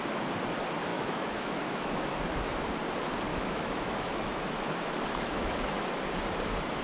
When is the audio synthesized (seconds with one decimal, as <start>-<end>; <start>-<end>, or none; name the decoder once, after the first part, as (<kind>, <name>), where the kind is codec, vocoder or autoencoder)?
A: 0.9-2.2 (autoencoder, DAC-VAE); 3.3-6.0